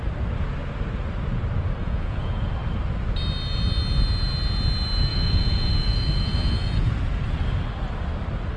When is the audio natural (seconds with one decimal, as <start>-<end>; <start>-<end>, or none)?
0.0-1.8; 2.5-5.1; 6.9-8.6